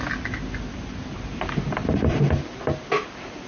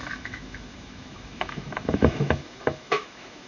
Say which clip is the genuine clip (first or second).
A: first